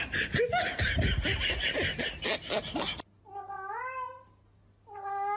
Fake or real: real